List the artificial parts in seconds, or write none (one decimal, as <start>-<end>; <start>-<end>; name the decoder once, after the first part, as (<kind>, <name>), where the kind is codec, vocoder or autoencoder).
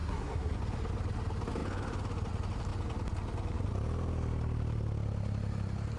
0.0-0.6 (codec, SNAC)